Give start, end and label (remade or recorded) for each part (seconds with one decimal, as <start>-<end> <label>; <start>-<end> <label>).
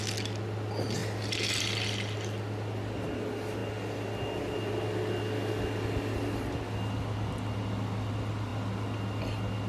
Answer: 0.0-9.7 recorded